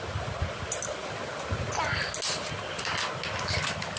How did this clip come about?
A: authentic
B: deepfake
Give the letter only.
A